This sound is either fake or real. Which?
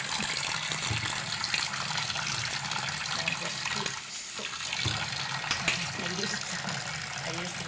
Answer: real